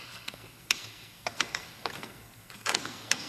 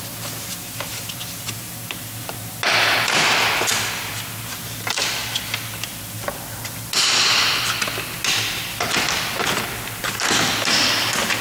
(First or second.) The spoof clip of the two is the first